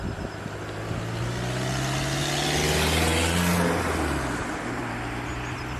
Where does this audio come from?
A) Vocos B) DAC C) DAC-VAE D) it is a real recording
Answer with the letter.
D